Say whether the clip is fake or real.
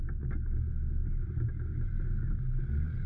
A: real